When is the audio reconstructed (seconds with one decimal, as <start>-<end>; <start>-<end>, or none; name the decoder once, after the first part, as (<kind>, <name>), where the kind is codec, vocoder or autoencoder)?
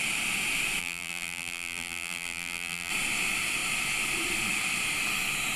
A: 0.8-2.9 (vocoder, BigVGAN v2)